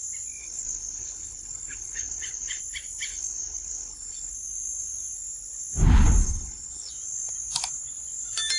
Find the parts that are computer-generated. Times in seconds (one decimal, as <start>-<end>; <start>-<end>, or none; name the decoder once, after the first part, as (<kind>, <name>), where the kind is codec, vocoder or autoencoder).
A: 0.4-2.6 (codec, HILCodec); 3.1-4.3; 6.2-6.9

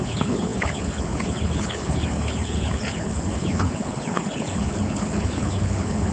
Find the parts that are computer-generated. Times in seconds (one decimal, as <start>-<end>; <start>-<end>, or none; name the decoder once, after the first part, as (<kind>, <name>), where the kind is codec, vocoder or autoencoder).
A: 0.0-6.1 (codec, HILCodec)

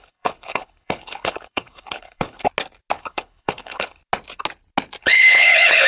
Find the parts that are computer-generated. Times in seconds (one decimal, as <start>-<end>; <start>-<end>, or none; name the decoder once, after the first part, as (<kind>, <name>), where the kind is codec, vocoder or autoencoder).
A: 0.0-2.5 (codec, HILCodec); 3.0-4.0; 5.0-5.9

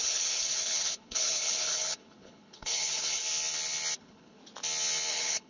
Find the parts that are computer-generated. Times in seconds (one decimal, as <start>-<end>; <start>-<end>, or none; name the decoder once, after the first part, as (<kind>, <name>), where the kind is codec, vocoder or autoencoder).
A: 0.0-3.2 (codec, HILCodec); 4.0-4.4; 5.1-5.5

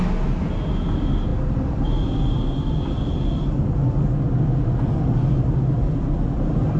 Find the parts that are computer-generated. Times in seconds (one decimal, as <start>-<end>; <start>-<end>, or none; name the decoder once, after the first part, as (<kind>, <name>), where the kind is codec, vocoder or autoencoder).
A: none

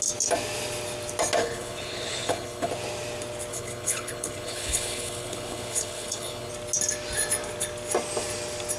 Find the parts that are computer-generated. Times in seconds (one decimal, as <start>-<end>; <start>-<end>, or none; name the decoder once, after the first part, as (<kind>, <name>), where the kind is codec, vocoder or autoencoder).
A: 1.4-2.7 (codec, HILCodec); 3.5-6.5